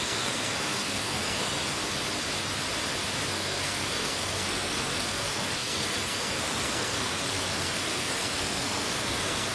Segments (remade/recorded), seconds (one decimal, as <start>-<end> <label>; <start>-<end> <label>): 0.0-1.8 remade; 1.8-3.3 recorded; 3.3-9.5 remade